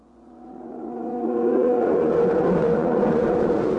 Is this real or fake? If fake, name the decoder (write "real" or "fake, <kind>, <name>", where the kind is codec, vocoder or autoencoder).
fake, vocoder, Vocos